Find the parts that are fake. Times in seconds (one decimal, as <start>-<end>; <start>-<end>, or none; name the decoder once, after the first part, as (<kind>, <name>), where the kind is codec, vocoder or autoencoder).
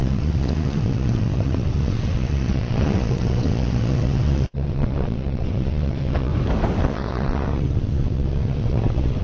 0.0-6.3 (vocoder, WaveNeXt); 6.8-9.2